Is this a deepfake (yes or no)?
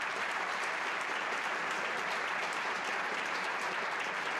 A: yes